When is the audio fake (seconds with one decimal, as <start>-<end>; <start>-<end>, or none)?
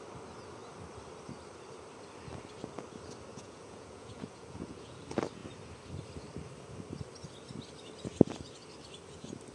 3.3-5.0